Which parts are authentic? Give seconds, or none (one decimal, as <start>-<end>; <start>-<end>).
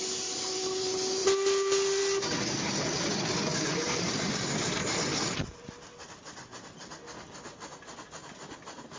0.0-9.0